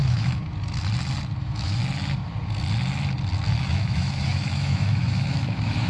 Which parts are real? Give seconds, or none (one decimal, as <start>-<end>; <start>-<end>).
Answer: 0.4-1.4; 1.8-3.6